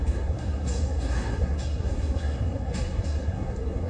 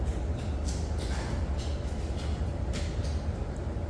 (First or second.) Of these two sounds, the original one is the second